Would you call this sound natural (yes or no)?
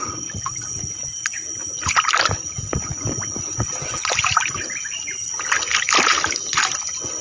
yes